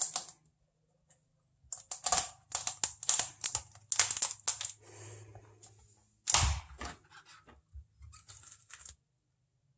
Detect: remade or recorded recorded